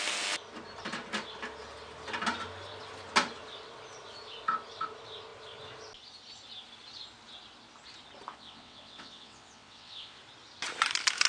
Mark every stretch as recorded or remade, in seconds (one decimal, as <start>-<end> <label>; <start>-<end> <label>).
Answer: 0.0-8.3 recorded; 8.3-10.2 remade; 10.2-11.3 recorded